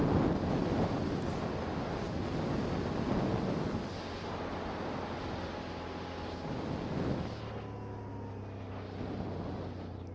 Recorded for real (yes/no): yes